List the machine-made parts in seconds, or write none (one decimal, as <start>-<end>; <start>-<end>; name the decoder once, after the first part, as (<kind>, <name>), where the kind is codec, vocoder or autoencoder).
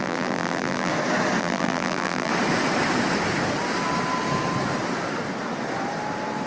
0.0-0.9 (vocoder, BigVGAN v2); 1.4-2.3